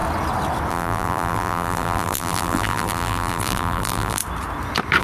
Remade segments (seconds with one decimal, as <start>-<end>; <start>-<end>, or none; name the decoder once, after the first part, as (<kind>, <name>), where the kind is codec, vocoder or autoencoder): 0.7-4.2 (vocoder, BigVGAN v2)